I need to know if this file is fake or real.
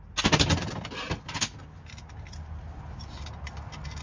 real